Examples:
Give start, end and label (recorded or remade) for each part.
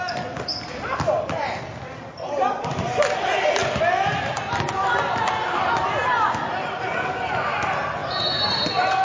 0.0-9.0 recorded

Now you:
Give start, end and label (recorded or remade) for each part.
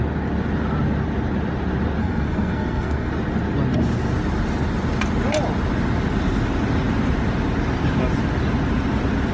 0.0-2.0 recorded; 2.0-3.1 remade; 3.1-9.3 recorded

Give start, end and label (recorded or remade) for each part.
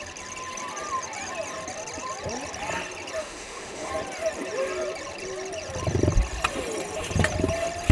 0.0-3.2 recorded; 3.2-3.9 remade; 3.9-7.9 recorded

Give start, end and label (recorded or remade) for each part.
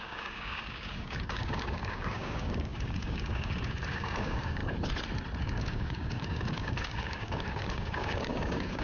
0.0-4.6 remade; 4.6-5.4 recorded; 5.4-8.8 remade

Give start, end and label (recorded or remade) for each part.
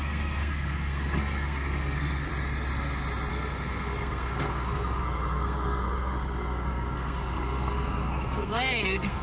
0.0-2.3 remade; 2.3-3.3 recorded; 3.3-9.2 remade